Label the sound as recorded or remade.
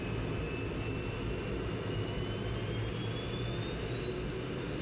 recorded